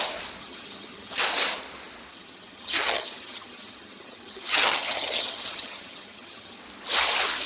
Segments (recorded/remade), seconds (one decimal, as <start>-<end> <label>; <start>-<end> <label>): 0.0-0.4 recorded; 0.4-1.2 remade; 1.2-2.1 recorded; 2.1-6.6 remade; 6.6-7.5 recorded